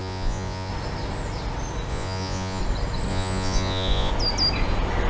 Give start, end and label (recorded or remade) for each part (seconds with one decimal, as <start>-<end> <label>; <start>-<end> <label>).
0.0-0.7 remade; 0.7-1.9 recorded; 1.9-2.6 remade; 2.6-3.1 recorded; 3.1-4.1 remade; 4.1-5.1 recorded